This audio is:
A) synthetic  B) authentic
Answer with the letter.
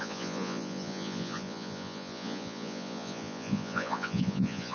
A